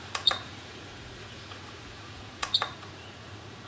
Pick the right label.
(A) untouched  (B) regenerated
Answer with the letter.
B